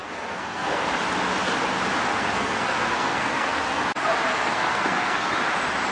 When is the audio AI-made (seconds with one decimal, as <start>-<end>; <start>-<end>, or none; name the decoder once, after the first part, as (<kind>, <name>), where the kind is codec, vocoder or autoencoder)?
0.0-0.9 (codec, SNAC); 2.1-3.8; 4.3-5.3